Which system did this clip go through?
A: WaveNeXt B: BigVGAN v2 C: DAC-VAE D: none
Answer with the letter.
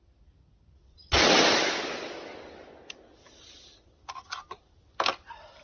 D